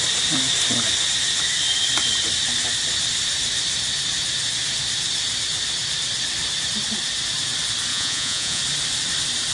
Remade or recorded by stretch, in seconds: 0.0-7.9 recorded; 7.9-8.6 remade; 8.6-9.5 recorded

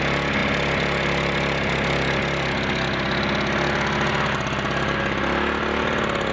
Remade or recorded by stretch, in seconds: 0.0-6.3 recorded

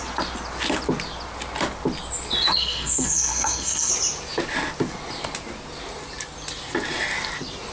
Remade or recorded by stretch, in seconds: 0.0-2.6 recorded; 2.6-3.9 remade; 3.9-7.7 recorded

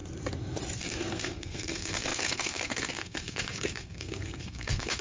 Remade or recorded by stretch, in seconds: 0.0-0.8 recorded; 0.8-5.0 remade

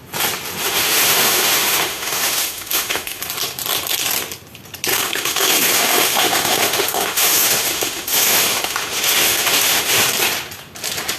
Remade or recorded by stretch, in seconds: 0.0-0.6 recorded; 0.6-3.2 remade; 3.2-4.9 recorded; 4.9-10.1 remade; 10.1-11.2 recorded

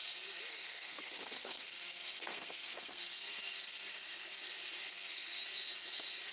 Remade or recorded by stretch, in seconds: 0.0-0.5 recorded; 0.5-4.4 remade; 4.4-4.9 recorded; 4.9-5.4 remade; 5.4-6.3 recorded

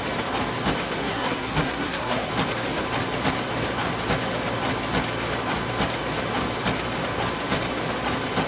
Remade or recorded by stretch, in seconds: 0.0-1.0 recorded; 1.0-2.3 remade; 2.3-8.5 recorded

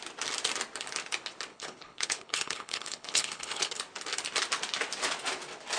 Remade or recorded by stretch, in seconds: 0.0-1.5 recorded; 1.5-3.8 remade; 3.8-5.8 recorded